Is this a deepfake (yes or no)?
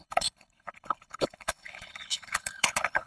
yes